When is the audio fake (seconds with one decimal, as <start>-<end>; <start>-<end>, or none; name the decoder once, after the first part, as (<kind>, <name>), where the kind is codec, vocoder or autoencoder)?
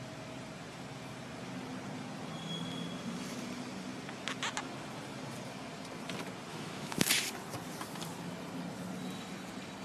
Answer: 6.5-7.1 (autoencoder, DAC-VAE)